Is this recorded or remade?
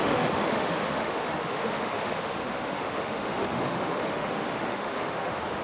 remade